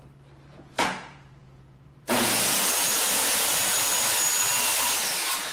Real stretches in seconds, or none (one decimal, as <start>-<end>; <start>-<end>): 0.0-0.5; 3.8-5.5